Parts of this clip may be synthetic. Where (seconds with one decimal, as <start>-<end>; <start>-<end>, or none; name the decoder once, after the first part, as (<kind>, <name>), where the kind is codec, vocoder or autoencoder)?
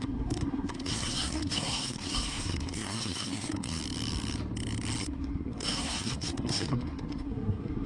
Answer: 0.0-3.8 (codec, SNAC); 5.0-7.9